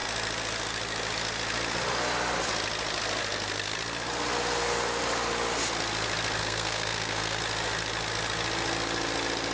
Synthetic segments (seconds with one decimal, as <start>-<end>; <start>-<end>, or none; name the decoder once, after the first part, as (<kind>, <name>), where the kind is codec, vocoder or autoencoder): 6.4-7.4 (codec, SNAC)